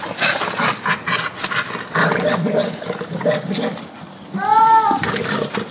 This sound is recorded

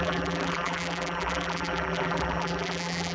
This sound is remade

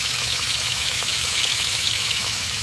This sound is remade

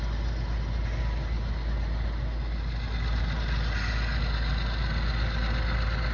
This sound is recorded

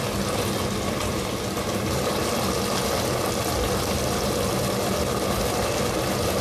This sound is recorded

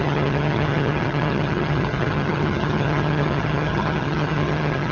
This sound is remade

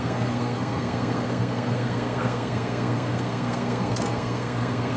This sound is remade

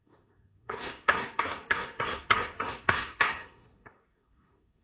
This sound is remade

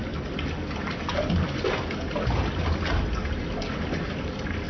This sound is recorded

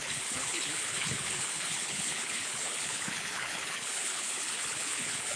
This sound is remade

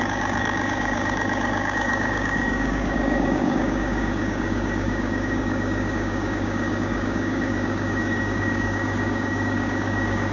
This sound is remade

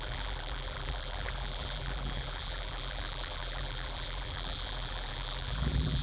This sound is remade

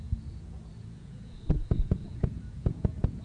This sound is remade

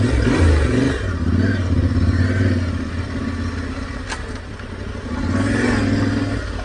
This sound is recorded